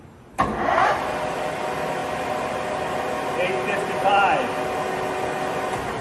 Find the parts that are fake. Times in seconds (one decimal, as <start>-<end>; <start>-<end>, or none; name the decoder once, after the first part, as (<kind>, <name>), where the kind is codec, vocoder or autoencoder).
none